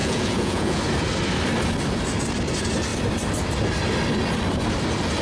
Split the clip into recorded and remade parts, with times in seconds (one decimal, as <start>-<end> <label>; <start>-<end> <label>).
0.0-0.8 remade; 0.8-5.2 recorded